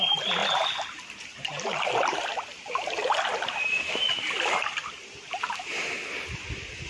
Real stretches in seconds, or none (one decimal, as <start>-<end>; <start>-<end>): 0.0-6.9